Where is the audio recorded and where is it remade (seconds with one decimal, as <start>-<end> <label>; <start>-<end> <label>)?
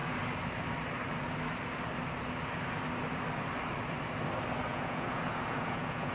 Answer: 0.0-4.7 recorded; 4.7-6.1 remade